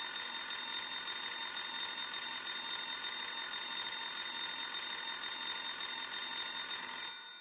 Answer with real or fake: real